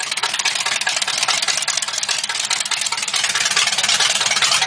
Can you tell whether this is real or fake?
real